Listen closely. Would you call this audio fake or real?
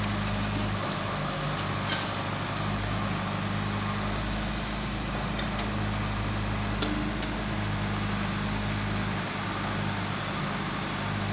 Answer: real